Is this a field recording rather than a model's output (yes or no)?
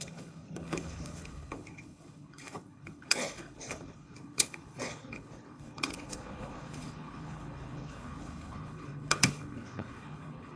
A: no